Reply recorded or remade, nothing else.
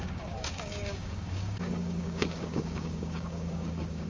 remade